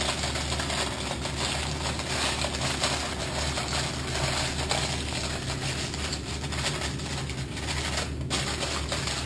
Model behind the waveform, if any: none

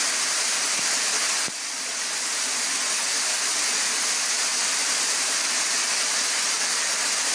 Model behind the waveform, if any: none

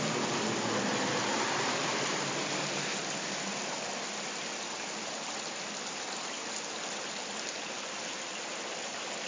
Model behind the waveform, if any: none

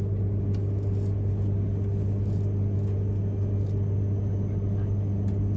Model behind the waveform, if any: none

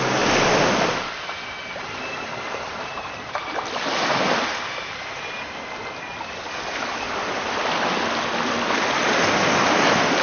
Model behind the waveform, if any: none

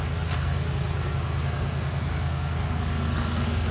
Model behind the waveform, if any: codec, SNAC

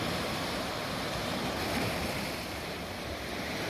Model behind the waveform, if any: none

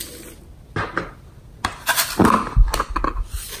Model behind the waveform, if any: none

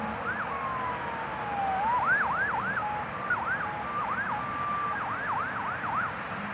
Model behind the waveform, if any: none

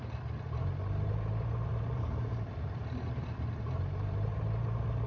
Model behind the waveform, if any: vocoder, BigVGAN v2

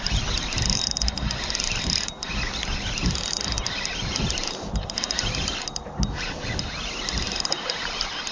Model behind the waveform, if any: none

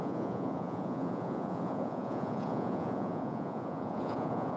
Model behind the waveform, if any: vocoder, Vocos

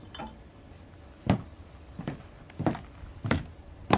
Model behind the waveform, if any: none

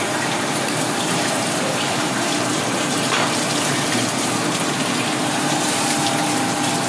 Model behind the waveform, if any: vocoder, BigVGAN v2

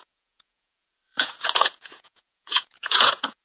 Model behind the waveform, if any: vocoder, Vocos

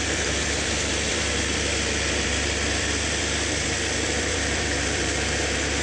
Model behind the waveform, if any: vocoder, BigVGAN v2